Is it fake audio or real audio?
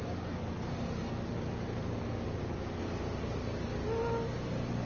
real